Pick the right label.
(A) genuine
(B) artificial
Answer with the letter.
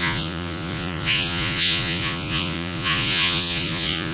B